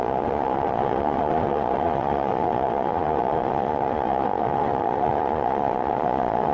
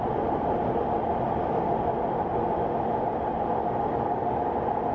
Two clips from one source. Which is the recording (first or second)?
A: second